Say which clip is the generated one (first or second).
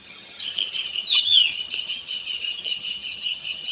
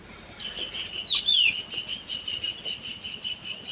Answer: first